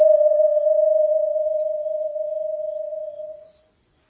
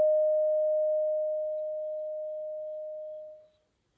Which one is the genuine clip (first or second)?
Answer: second